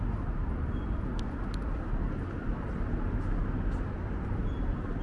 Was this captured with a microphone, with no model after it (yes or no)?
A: yes